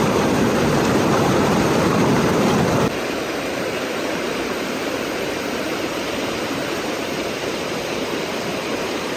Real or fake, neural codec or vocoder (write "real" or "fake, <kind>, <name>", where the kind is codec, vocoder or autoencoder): fake, vocoder, BigVGAN v2